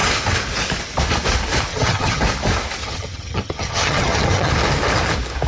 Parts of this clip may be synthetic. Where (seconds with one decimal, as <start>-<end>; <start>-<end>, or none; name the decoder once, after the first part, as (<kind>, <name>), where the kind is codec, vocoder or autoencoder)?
1.7-2.2 (vocoder, HiFi-GAN); 2.8-4.5